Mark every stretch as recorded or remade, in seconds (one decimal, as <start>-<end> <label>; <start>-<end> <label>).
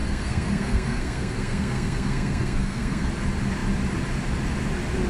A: 0.0-3.1 remade; 3.1-5.1 recorded